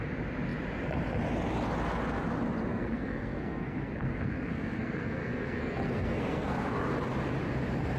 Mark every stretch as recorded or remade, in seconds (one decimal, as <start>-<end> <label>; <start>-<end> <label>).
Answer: 0.0-2.7 recorded; 2.7-6.8 remade; 6.8-8.0 recorded